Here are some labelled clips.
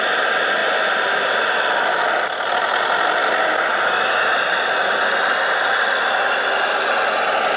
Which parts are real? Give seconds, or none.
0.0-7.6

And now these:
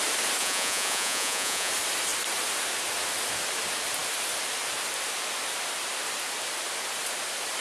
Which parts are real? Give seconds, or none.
0.0-0.4; 1.7-7.6

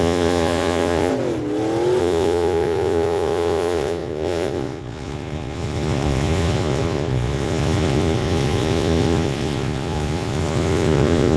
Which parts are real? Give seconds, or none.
1.1-2.0